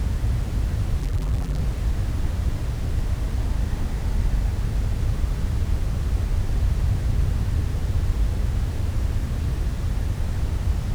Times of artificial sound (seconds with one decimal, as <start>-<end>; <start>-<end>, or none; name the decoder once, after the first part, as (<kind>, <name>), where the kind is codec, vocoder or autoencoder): 1.0-1.6 (vocoder, BigVGAN v2)